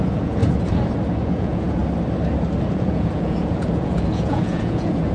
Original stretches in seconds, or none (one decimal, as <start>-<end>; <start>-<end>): 0.4-1.2; 1.8-2.7